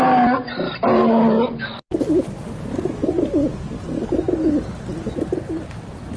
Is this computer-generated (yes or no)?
no